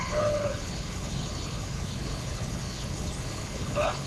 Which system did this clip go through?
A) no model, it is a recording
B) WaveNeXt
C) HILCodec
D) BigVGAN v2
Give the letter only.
C